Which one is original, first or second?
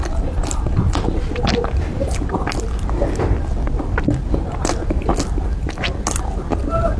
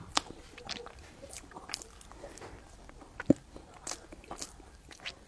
first